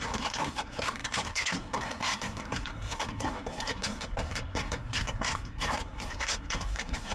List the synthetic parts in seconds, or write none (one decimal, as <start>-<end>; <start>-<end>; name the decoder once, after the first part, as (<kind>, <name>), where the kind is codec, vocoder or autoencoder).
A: 0.0-7.1 (codec, SNAC)